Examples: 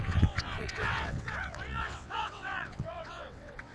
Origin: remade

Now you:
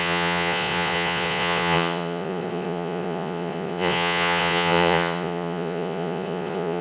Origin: remade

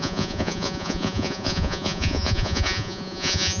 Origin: remade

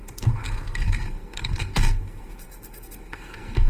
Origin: remade